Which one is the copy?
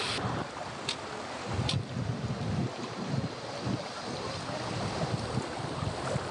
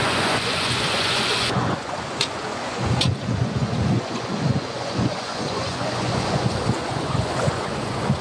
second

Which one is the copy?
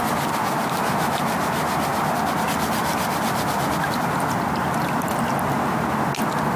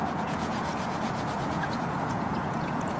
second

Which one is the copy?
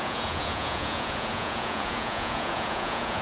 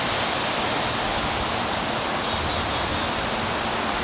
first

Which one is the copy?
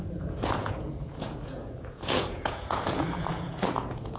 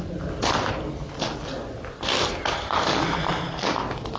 first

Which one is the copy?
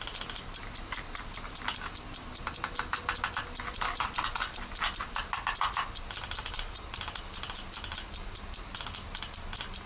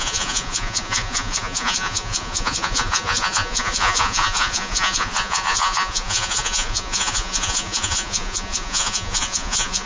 second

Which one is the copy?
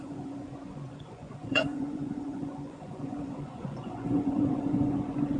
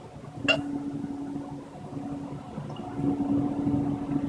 first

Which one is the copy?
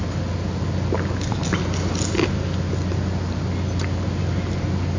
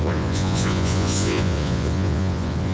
second